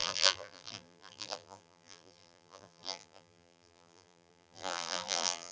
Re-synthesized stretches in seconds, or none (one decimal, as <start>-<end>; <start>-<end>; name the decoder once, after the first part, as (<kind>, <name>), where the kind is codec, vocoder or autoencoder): 0.0-5.5 (vocoder, BigVGAN v2)